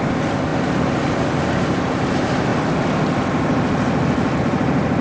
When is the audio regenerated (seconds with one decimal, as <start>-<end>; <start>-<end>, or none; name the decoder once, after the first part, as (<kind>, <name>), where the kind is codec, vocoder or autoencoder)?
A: none